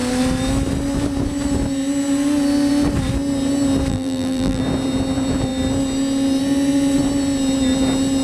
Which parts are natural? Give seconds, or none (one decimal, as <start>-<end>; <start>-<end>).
0.0-3.9; 4.6-8.2